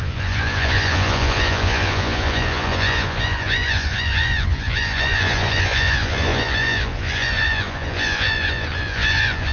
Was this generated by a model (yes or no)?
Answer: yes